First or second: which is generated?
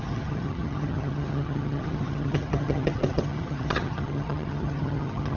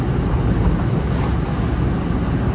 first